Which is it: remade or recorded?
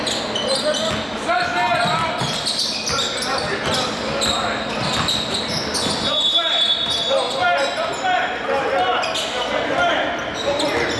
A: recorded